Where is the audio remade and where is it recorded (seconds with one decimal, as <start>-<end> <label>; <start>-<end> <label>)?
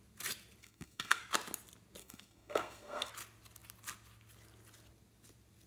0.0-0.6 recorded; 0.6-1.2 remade; 1.2-2.0 recorded; 2.0-3.1 remade; 3.1-5.7 recorded